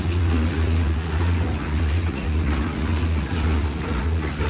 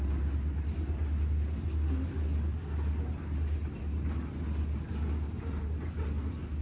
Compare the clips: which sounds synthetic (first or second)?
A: first